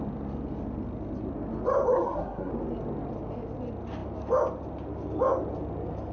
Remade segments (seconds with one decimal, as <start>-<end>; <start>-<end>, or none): 1.9-2.5